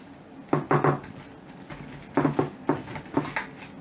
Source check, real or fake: real